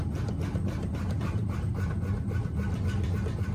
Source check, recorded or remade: recorded